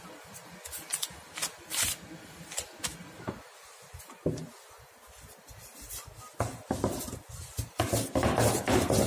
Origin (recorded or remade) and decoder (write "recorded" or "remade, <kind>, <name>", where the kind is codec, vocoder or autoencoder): recorded